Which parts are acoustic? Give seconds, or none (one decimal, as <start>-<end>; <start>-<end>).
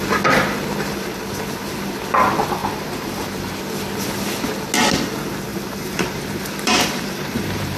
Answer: 0.0-2.6; 3.6-5.5